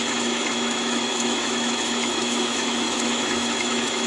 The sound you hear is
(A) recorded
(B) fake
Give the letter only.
B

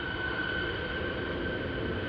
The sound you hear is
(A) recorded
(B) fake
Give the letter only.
A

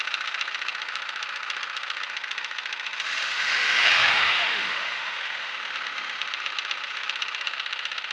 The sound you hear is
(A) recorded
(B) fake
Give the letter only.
B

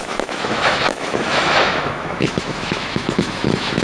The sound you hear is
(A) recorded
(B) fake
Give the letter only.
B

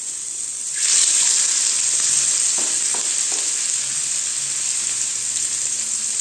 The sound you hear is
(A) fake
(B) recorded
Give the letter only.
B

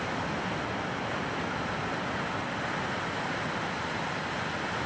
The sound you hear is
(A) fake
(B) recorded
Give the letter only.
B